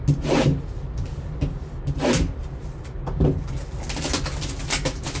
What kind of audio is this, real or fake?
real